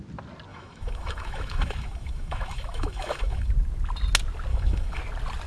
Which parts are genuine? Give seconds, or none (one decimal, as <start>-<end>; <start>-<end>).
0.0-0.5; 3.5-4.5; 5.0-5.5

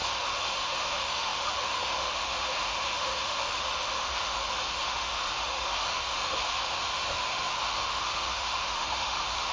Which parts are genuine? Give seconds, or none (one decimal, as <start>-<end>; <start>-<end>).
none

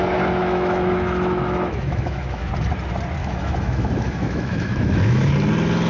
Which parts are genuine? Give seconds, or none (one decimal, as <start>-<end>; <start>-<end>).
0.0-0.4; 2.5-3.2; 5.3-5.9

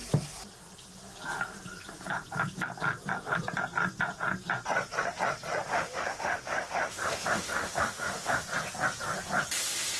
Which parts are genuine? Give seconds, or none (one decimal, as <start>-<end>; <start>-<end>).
0.0-5.7; 8.4-10.0

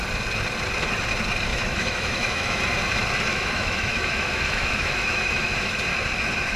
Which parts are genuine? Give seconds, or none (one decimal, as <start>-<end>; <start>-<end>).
0.0-1.5; 2.6-3.3; 5.7-6.6